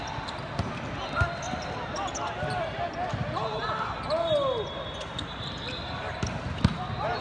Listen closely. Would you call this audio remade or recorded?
recorded